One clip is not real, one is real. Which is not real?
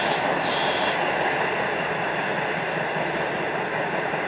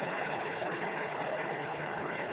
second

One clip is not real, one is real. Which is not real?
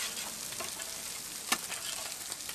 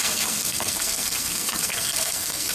second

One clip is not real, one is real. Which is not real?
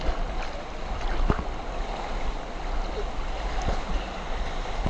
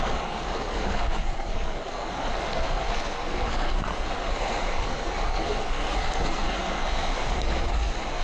second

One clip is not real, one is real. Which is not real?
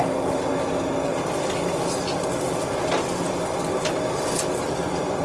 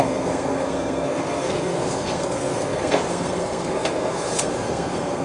second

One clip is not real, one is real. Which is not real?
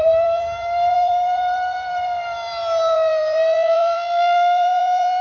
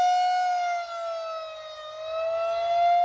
first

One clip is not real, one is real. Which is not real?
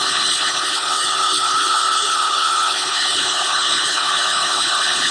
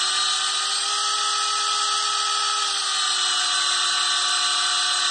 first